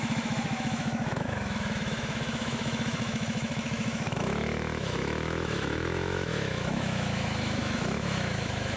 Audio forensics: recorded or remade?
remade